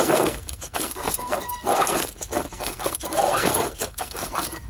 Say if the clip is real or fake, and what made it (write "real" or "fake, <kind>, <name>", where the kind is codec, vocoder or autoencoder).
fake, codec, SNAC